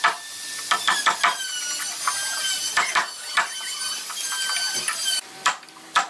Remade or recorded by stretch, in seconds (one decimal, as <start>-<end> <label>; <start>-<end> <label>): 0.0-2.2 recorded; 2.2-3.4 remade; 3.4-6.1 recorded